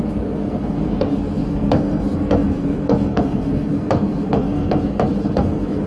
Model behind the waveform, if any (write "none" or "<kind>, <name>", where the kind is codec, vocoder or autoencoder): codec, SNAC